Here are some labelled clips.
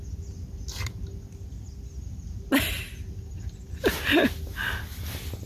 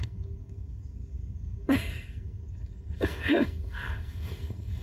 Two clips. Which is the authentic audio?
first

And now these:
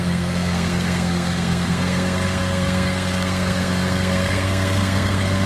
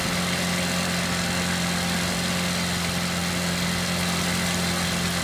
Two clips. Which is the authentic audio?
second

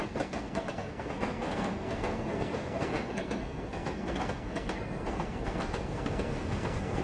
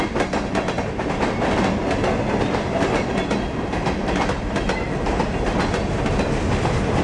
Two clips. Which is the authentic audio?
second